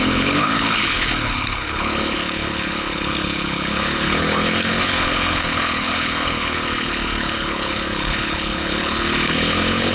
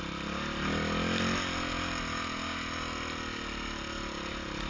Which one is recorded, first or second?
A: second